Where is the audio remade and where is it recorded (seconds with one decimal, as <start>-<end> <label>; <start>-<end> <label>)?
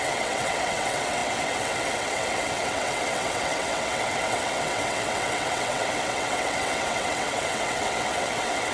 0.0-8.7 remade